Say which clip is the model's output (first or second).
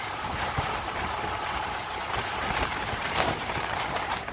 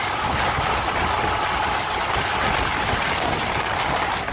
first